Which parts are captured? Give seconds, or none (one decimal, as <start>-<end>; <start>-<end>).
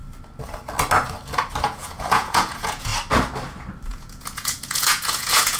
0.0-1.6; 2.9-3.9